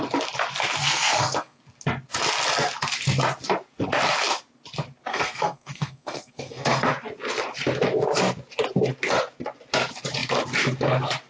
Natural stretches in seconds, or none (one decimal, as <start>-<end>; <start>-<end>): 0.0-0.8; 1.6-5.1; 6.9-11.3